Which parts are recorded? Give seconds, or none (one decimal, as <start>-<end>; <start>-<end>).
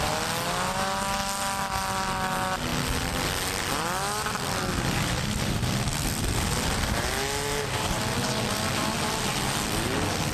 0.0-10.3